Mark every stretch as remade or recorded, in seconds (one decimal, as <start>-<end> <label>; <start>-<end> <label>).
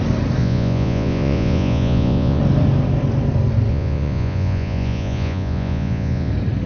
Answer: 0.0-0.4 recorded; 0.4-2.4 remade; 2.4-3.7 recorded; 3.7-6.3 remade; 6.3-6.7 recorded